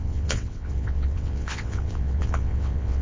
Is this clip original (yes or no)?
no